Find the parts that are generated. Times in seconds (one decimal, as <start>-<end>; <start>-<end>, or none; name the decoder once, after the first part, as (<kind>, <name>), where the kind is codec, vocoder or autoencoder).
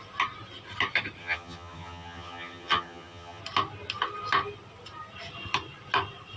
1.2-3.4 (vocoder, HiFi-GAN)